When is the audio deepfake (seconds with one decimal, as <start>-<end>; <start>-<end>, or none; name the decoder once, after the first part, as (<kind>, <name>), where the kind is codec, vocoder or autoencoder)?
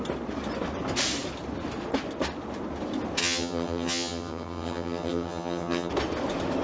3.2-5.9 (vocoder, HiFi-GAN)